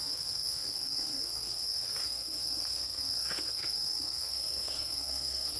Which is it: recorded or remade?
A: remade